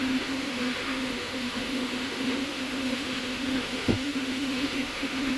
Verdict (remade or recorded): remade